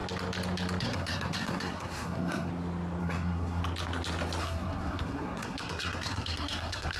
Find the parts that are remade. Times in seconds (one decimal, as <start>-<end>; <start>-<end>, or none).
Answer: 0.8-2.5; 3.0-3.6; 4.4-7.0